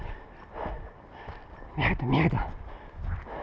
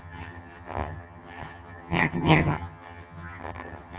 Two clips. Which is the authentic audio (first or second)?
first